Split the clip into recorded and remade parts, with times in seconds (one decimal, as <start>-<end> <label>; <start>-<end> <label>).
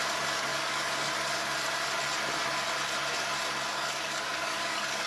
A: 0.0-0.5 recorded; 0.5-1.1 remade; 1.1-3.7 recorded; 3.7-5.1 remade